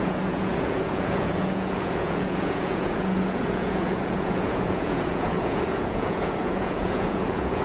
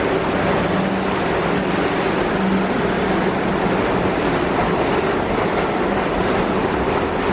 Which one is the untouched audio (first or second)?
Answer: second